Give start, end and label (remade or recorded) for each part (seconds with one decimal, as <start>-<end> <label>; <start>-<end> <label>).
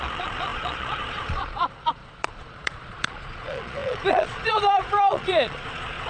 0.0-6.1 remade